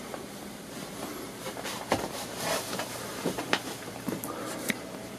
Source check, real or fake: fake